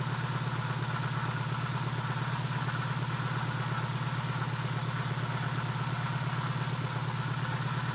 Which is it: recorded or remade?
recorded